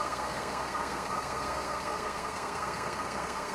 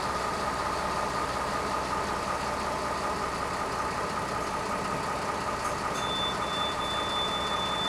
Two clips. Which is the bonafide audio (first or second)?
second